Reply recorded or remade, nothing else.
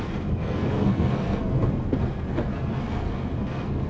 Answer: remade